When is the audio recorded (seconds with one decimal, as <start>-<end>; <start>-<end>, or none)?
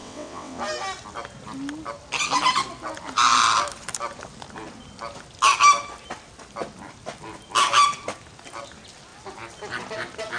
0.6-10.4